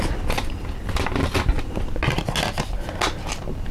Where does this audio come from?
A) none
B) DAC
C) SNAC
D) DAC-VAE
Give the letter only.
A